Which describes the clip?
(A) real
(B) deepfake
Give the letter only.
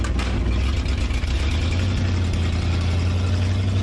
A